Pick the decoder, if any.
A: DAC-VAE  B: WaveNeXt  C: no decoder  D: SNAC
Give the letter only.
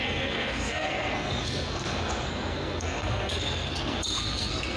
D